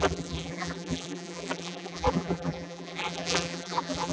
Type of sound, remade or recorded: remade